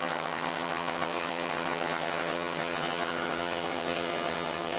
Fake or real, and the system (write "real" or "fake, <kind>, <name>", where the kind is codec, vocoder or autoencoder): fake, vocoder, HiFi-GAN